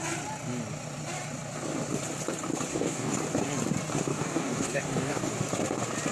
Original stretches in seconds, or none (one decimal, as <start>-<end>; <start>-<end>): 0.0-2.7; 3.2-4.1; 5.3-6.1